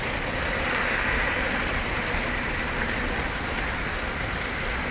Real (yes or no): yes